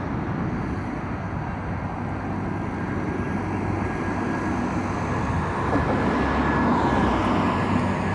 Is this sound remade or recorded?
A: recorded